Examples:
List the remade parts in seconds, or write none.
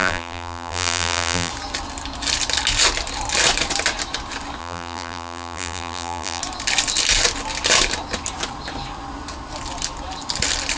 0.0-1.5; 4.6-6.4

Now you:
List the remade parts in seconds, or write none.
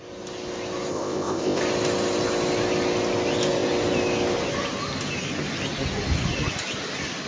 0.9-1.6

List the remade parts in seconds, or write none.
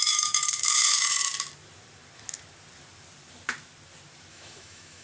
0.0-1.3; 4.3-5.0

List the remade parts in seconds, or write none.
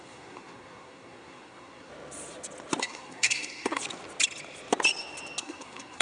0.0-1.9; 2.8-3.8; 5.4-6.0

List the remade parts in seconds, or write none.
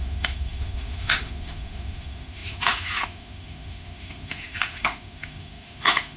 0.0-6.2